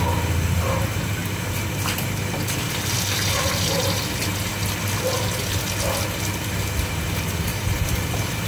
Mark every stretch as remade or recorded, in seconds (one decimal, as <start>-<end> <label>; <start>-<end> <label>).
0.0-7.5 recorded; 7.5-8.5 remade